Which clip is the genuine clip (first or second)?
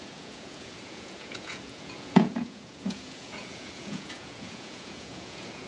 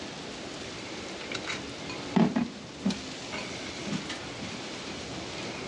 second